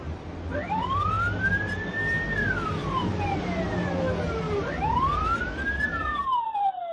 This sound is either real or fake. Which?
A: real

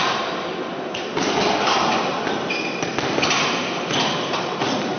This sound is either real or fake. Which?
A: real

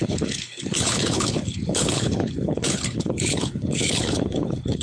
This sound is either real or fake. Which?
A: fake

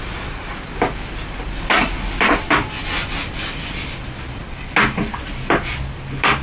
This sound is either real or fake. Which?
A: real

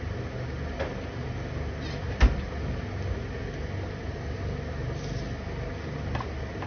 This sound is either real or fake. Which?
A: real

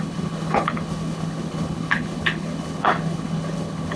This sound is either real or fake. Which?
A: fake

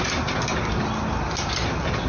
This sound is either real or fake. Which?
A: real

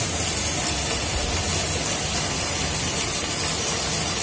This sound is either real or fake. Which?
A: real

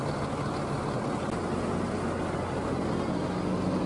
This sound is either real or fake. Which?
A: real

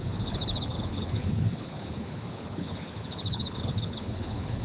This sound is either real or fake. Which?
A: fake